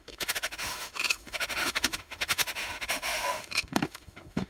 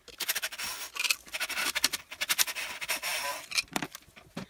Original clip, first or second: second